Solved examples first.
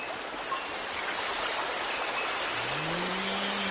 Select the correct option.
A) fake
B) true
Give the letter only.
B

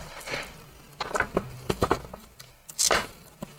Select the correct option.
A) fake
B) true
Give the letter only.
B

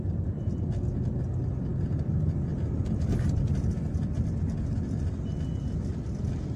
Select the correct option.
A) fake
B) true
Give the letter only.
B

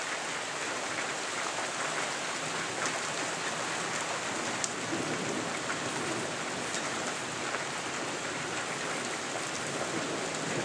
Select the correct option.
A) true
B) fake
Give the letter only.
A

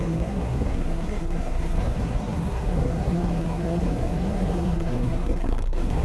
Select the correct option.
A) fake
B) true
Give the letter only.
A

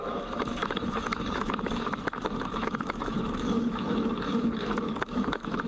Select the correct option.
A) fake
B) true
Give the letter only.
A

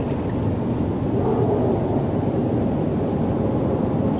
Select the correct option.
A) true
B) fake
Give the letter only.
A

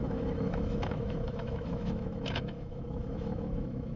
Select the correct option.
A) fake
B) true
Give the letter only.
A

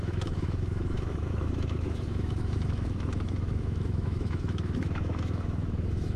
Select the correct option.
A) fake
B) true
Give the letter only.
A